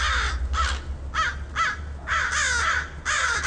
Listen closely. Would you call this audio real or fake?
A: real